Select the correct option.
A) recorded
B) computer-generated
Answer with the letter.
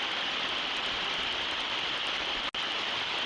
A